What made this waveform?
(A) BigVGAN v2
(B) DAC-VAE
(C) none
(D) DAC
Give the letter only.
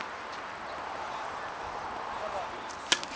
C